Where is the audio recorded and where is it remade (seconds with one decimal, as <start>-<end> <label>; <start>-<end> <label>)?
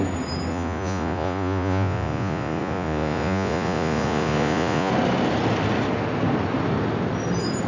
0.0-0.5 recorded; 0.5-4.9 remade; 4.9-7.7 recorded